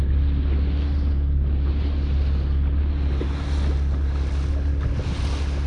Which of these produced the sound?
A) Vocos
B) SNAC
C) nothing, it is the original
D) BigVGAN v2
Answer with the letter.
C